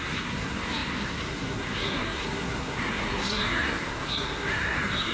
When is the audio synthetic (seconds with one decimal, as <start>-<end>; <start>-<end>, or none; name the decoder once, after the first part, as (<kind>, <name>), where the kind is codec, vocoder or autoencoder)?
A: 0.0-5.1 (codec, SNAC)